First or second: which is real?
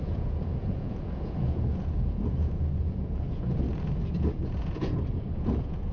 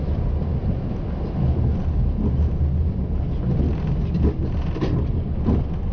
second